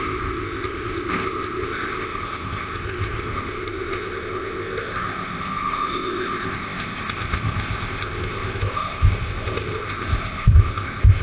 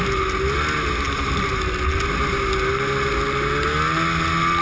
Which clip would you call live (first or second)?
second